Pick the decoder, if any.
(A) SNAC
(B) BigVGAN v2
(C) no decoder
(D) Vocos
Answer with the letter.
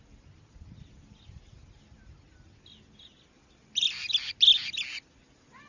C